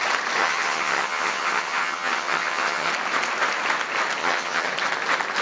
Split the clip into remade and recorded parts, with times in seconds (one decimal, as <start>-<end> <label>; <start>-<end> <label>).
0.0-0.4 recorded; 0.4-2.9 remade; 2.9-4.2 recorded; 4.2-4.7 remade; 4.7-5.4 recorded